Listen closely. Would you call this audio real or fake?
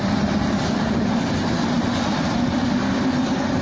real